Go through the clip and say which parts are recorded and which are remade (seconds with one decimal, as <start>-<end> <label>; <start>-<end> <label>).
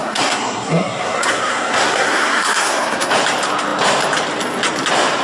0.0-3.1 remade; 3.1-5.2 recorded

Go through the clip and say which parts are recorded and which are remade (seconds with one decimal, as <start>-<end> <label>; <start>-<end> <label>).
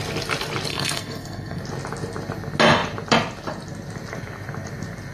0.0-0.7 recorded; 0.7-1.6 remade; 1.6-5.1 recorded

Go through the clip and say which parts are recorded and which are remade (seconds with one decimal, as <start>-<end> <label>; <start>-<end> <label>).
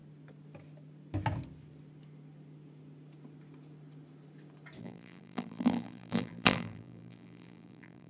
0.0-4.8 recorded; 4.8-8.1 remade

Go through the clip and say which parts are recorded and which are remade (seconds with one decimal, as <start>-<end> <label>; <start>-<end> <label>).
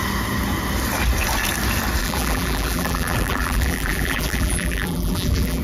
0.0-2.0 recorded; 2.0-5.6 remade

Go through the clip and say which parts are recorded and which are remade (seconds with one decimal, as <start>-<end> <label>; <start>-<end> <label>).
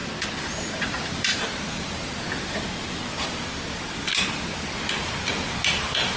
0.0-6.2 recorded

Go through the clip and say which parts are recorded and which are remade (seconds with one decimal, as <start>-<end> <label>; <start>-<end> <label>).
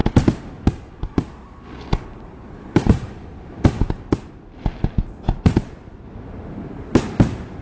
0.0-7.6 recorded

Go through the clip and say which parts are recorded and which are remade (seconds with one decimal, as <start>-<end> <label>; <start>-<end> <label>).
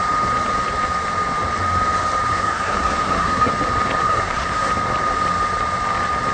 0.0-2.3 recorded; 2.3-3.5 remade; 3.5-4.0 recorded; 4.0-4.7 remade; 4.7-6.3 recorded